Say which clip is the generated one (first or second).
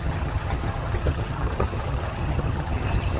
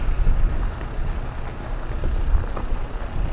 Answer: first